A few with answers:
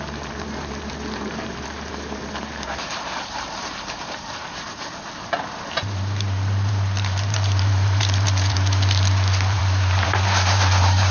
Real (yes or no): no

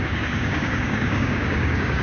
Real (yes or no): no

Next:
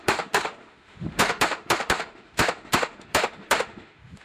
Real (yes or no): no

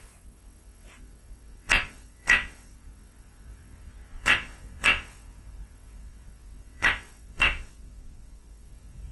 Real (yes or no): no